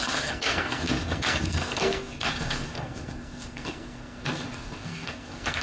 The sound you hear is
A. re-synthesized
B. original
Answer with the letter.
A